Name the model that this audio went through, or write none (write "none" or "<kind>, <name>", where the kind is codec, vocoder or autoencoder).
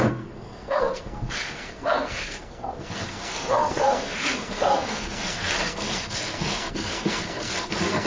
codec, SNAC